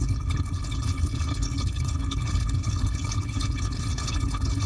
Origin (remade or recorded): remade